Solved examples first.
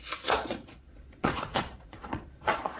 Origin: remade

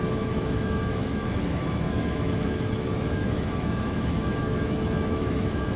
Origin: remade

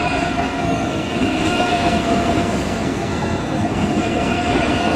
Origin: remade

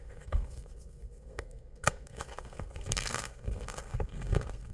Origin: remade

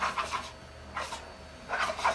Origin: recorded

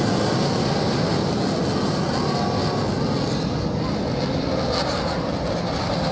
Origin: recorded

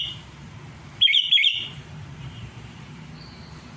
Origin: remade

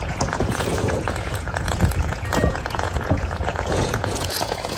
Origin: remade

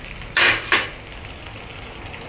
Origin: recorded